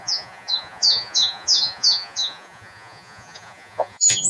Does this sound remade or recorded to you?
remade